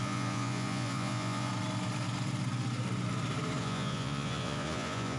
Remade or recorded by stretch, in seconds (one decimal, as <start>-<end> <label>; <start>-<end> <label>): 0.0-1.5 remade; 1.5-3.6 recorded; 3.6-5.2 remade